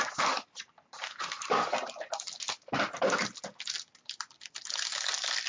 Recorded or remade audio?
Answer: recorded